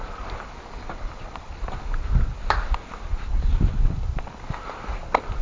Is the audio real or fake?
real